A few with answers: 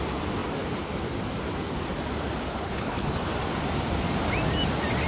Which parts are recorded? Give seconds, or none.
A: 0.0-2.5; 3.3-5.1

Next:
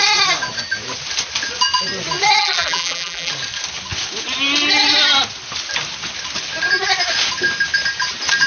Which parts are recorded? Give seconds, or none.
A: 0.0-2.4; 3.3-8.5

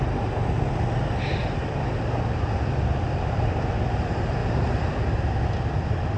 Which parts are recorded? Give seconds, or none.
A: 0.0-6.2

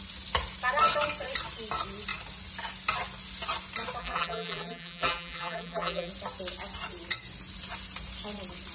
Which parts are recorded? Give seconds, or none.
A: 0.0-4.0; 6.1-8.7

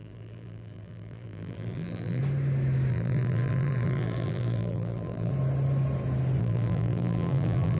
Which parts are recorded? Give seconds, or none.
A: 2.2-2.9; 5.3-6.4

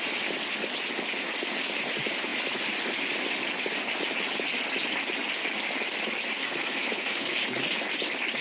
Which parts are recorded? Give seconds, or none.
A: 0.0-6.4; 7.4-8.4

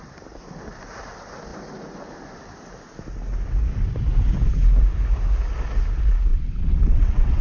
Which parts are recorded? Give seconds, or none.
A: 0.0-6.3